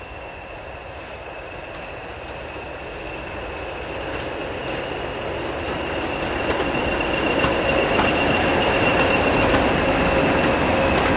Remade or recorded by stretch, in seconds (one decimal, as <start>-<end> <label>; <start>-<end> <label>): 0.0-8.9 recorded; 8.9-9.6 remade; 9.6-11.2 recorded